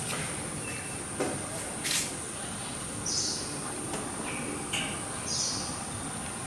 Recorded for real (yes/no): yes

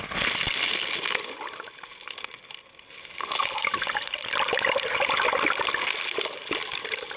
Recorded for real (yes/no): yes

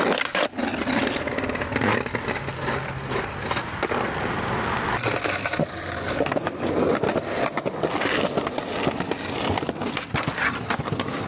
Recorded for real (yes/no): yes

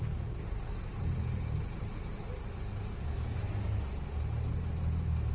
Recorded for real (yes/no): no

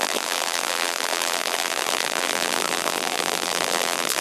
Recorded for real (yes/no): no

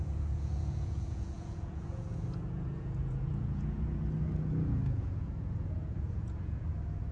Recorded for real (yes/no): no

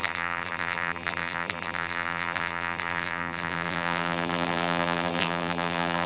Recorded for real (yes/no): no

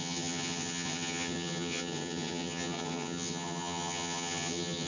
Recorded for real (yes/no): no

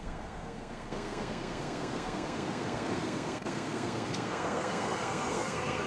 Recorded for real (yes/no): no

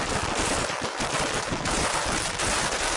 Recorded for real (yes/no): no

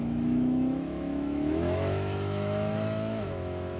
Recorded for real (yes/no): no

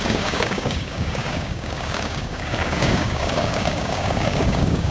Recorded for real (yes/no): no